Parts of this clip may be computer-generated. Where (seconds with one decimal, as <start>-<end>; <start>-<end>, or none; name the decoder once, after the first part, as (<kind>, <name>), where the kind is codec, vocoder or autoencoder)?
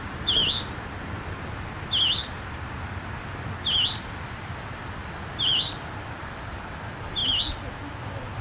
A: 0.0-0.4 (vocoder, BigVGAN v2); 3.9-7.2; 8.0-8.4